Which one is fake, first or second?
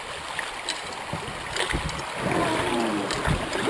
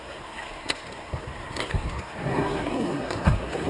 second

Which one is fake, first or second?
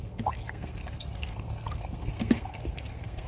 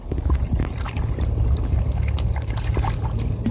first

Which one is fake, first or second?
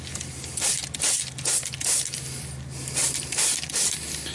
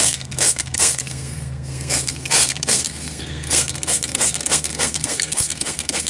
second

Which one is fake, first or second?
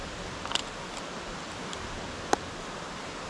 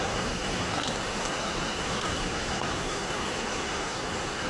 second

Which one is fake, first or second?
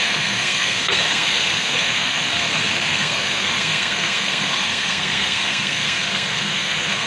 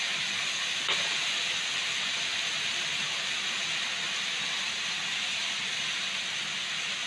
first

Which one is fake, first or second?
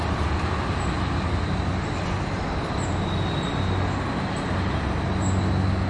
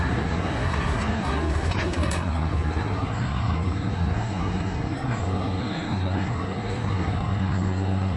second